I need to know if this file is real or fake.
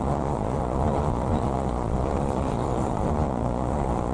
fake